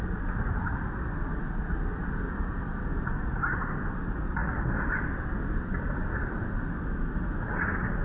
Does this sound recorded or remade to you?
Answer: recorded